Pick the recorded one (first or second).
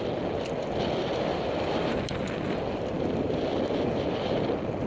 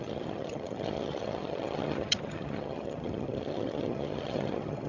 first